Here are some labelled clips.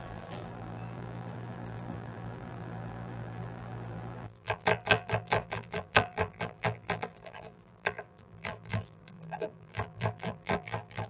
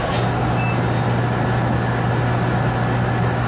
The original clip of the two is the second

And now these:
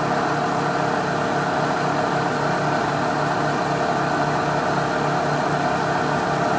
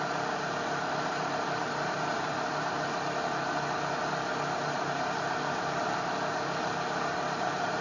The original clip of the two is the first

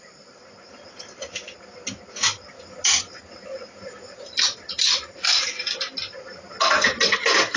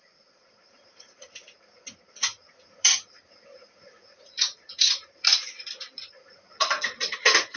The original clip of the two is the first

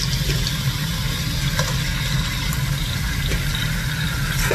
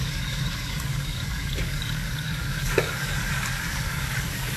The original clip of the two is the first